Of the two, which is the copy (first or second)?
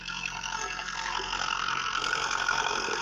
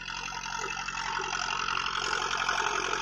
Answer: first